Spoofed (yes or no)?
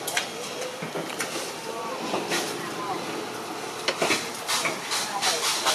no